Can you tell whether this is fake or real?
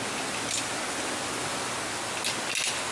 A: real